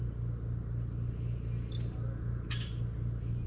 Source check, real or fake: real